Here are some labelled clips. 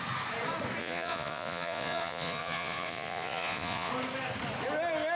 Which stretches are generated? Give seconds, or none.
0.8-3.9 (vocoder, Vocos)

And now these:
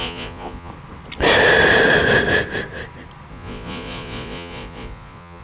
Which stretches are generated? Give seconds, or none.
0.0-0.7 (vocoder, Vocos); 3.3-5.4